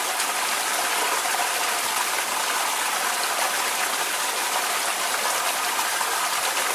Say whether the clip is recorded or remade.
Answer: recorded